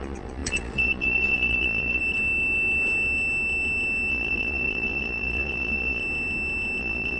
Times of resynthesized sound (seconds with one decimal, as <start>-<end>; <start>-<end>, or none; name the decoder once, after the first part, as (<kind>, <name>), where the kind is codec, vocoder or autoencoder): 0.0-2.0 (vocoder, Vocos); 4.1-6.0; 6.8-7.2